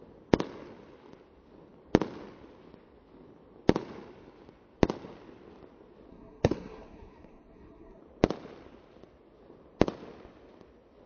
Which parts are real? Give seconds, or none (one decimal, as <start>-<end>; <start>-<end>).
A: 0.0-6.1; 8.0-11.1